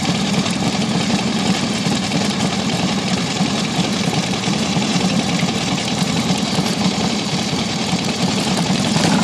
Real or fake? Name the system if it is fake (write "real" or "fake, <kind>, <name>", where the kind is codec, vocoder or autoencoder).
fake, vocoder, BigVGAN v2